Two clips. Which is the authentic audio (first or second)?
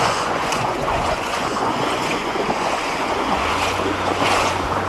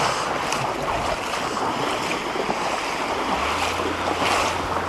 second